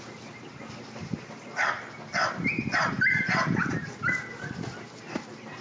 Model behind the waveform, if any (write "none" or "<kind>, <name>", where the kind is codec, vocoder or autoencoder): none